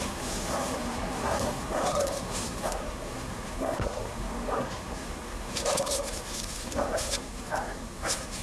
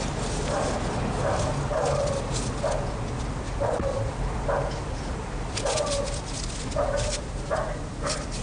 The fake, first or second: first